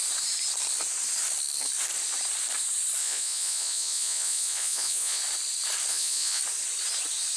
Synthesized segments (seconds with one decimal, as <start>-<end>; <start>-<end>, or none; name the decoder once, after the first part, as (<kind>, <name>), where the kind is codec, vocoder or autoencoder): 3.0-5.2 (vocoder, Vocos); 5.9-6.4